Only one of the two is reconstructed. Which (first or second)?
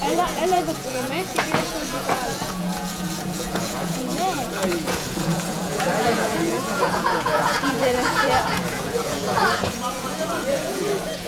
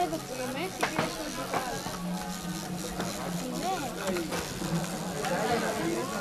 first